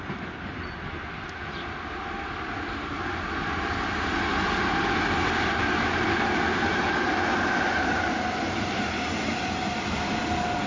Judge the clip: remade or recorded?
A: recorded